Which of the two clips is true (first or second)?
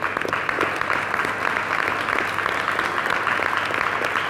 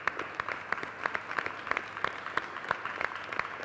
first